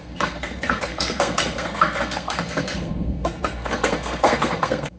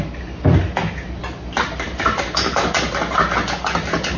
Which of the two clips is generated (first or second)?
first